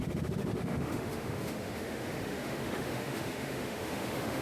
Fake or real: fake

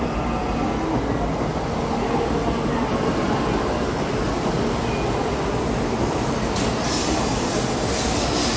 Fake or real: real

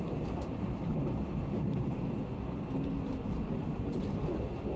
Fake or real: fake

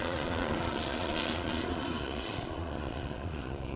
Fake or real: fake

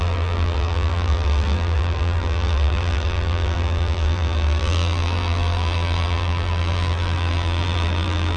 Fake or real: fake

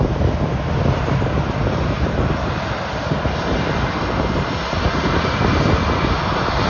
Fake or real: real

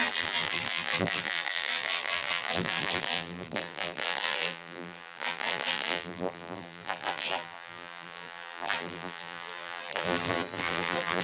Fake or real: fake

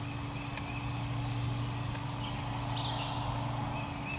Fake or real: real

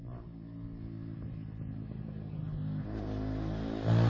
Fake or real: real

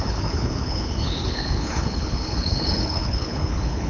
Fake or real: fake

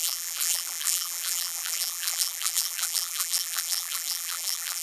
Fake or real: fake